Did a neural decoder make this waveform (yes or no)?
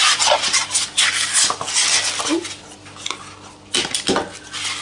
no